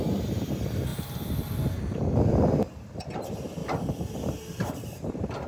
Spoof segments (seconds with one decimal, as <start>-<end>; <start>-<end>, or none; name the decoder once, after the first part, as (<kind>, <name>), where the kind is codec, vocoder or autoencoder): none